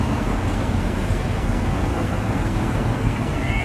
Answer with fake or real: fake